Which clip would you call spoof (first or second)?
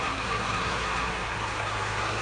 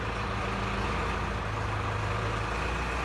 first